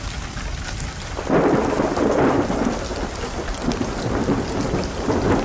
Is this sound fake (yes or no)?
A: no